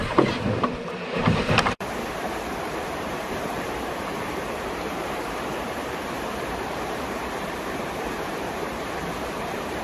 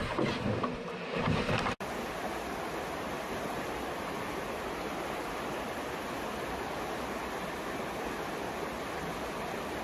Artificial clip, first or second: first